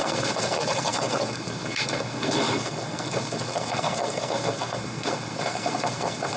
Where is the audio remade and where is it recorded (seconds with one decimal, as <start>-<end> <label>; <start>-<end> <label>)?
0.0-6.4 remade